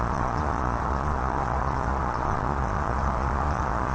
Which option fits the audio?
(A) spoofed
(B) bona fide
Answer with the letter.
A